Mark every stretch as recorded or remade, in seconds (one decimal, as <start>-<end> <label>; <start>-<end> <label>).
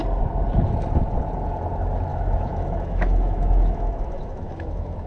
0.0-2.1 recorded; 2.1-5.1 remade